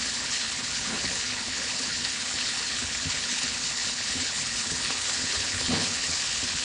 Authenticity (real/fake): fake